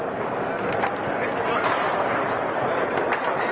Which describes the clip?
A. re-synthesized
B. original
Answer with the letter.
B